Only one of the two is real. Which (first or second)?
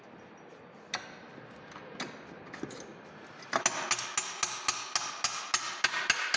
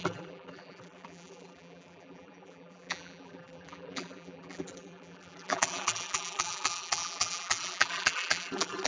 first